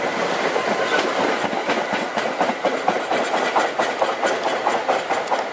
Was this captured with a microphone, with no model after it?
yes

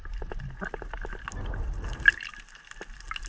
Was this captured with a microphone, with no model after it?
yes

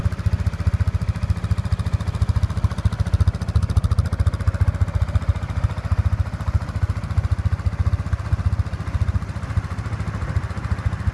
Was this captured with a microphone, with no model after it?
yes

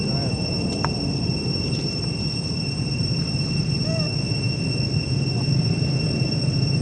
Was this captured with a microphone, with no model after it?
yes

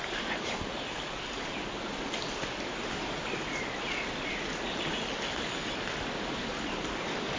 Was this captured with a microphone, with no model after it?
yes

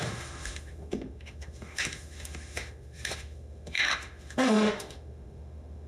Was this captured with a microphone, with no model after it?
no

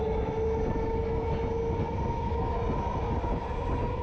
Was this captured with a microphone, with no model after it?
yes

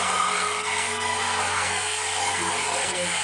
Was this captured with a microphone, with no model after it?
no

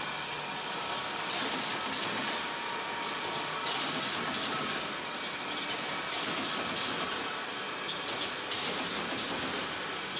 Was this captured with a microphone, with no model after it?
yes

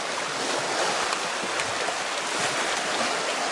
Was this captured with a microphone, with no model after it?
yes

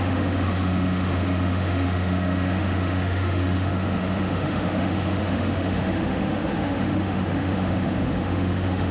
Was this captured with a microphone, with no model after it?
no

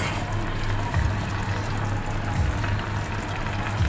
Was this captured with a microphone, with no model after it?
yes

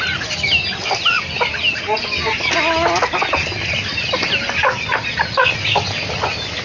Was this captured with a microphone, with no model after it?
yes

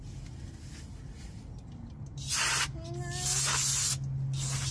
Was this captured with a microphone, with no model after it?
yes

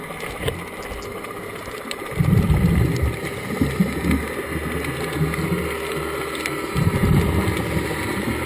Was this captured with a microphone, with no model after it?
yes